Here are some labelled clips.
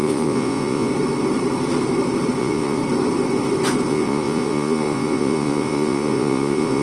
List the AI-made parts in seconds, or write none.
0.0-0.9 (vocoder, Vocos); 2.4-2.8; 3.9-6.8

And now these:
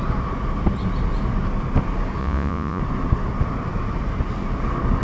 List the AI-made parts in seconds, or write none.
2.2-2.8 (vocoder, Vocos)

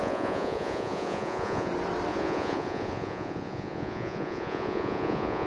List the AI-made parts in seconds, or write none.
0.0-1.7 (vocoder, Vocos); 2.1-5.5

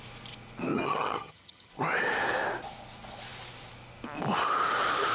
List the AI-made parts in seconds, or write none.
0.7-1.7 (vocoder, HiFi-GAN)

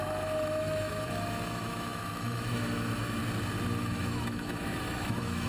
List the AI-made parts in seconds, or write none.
0.0-3.2 (autoencoder, DAC-VAE); 3.8-5.5

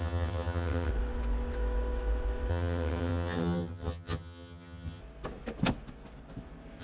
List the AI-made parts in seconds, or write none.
0.0-0.9 (vocoder, HiFi-GAN); 2.5-5.0

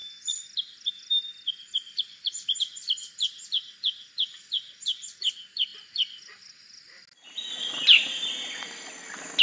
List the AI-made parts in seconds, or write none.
none